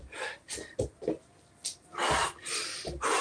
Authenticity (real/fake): real